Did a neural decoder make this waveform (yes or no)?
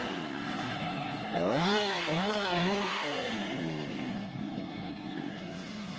yes